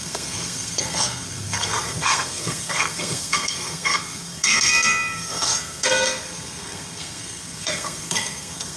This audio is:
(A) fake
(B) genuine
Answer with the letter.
A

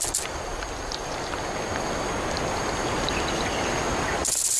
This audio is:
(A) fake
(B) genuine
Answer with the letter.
B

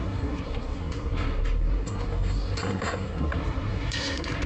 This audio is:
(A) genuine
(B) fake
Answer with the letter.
B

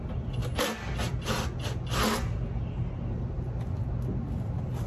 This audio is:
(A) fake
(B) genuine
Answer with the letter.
B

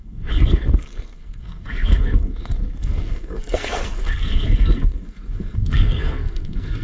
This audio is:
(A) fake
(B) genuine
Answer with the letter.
A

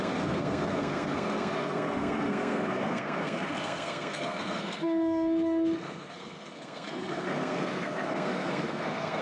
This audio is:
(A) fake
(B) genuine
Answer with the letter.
A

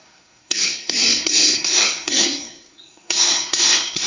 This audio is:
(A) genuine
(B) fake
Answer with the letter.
B